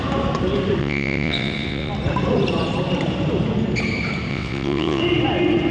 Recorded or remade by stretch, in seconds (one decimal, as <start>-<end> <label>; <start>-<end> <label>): 0.0-0.8 recorded; 0.8-1.9 remade; 1.9-4.3 recorded; 4.3-5.0 remade; 5.0-5.7 recorded